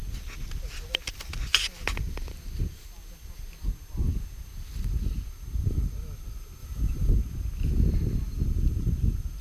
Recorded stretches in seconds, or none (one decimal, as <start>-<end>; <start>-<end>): 0.0-9.4